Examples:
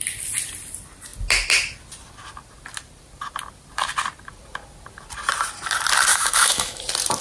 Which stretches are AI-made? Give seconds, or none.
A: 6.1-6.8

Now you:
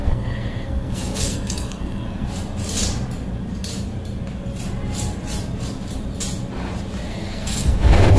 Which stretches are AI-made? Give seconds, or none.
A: 0.0-2.3; 7.1-8.2

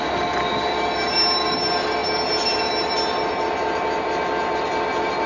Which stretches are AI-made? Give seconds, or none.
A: none

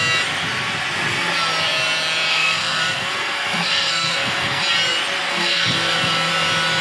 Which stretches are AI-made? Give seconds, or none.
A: 2.3-4.6; 5.3-6.3